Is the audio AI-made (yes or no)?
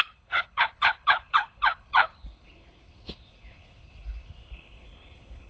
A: yes